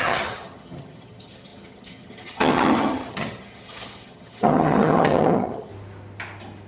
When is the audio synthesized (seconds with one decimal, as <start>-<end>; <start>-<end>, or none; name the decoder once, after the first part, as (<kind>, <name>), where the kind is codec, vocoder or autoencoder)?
0.0-5.7 (vocoder, HiFi-GAN)